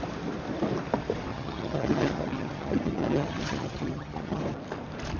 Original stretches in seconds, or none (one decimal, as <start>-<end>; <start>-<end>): 0.0-1.3; 4.4-5.2